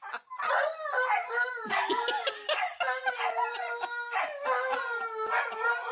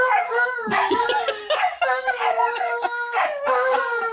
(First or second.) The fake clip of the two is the second